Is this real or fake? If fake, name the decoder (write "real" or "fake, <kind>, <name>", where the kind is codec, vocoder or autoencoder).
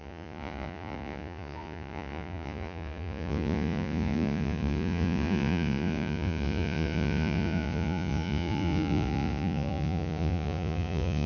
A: fake, vocoder, Vocos